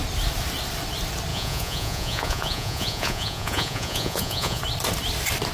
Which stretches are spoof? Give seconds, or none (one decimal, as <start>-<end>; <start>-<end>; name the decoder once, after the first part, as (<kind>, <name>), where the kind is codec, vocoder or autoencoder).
1.3-4.6 (vocoder, Vocos)